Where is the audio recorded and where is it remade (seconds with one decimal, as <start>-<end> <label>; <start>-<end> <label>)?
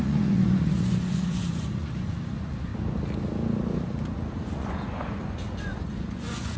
0.0-2.7 remade; 2.7-4.4 recorded; 4.4-6.6 remade